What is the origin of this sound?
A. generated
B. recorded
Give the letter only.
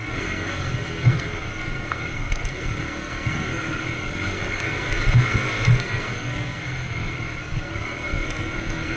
A